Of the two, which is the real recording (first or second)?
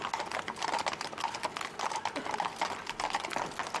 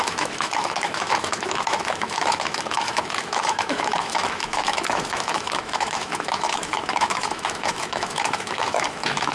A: first